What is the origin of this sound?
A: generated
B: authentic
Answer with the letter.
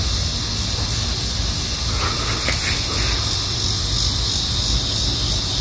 B